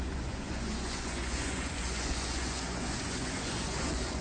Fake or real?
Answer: fake